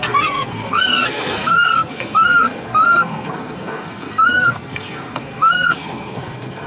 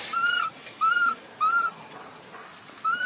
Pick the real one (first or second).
second